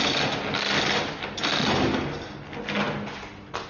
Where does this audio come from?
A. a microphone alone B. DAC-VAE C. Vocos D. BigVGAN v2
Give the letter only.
A